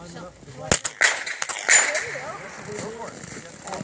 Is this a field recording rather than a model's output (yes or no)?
yes